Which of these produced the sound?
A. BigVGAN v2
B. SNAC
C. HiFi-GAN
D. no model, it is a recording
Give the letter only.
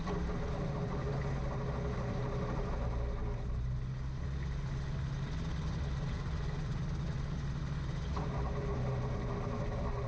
D